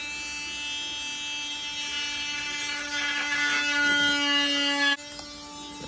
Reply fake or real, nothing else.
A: real